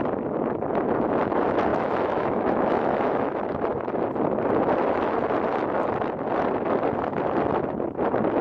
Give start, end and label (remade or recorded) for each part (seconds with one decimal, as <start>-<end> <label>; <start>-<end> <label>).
0.0-1.7 recorded; 1.7-3.3 remade; 3.3-8.4 recorded